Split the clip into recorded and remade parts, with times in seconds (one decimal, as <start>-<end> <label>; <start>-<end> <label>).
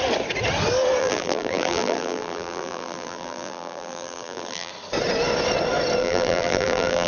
0.0-1.0 recorded; 1.0-4.7 remade; 4.7-6.0 recorded; 6.0-7.1 remade